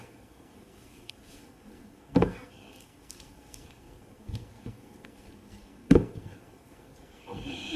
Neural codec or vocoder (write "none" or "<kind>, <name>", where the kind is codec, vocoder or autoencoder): codec, SNAC